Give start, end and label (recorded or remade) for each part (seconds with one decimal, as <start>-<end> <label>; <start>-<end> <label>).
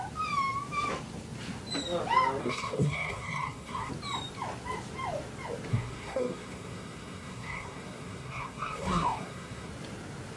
0.0-2.4 recorded; 2.4-3.9 remade; 3.9-5.7 recorded; 5.7-9.7 remade; 9.7-10.4 recorded